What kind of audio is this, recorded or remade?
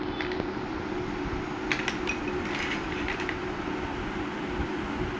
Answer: recorded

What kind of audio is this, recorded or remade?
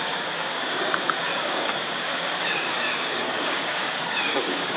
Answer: remade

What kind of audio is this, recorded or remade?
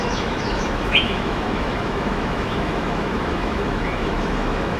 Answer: remade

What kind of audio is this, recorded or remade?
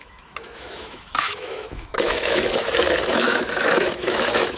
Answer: remade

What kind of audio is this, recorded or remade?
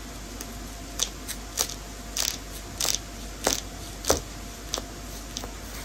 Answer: recorded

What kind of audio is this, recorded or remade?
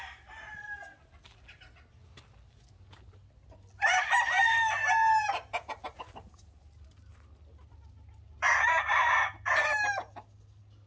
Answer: recorded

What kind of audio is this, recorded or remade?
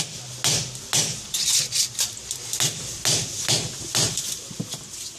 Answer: recorded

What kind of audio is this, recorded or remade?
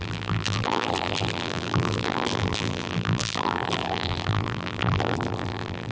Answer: remade